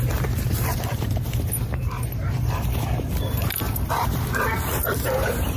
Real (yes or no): no